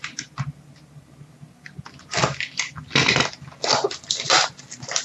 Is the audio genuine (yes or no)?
yes